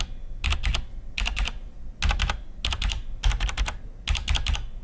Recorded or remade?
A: recorded